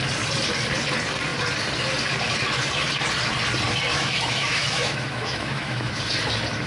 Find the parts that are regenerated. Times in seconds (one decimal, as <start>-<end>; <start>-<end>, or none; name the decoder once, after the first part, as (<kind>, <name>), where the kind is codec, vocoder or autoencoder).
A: 3.9-6.0 (autoencoder, DAC-VAE)